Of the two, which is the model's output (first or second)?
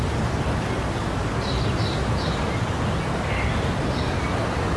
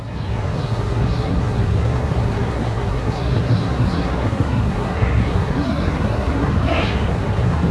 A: second